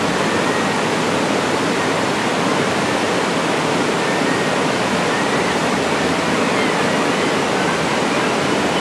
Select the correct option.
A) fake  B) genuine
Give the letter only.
B